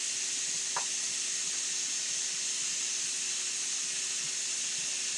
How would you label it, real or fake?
real